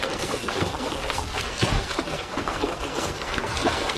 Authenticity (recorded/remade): remade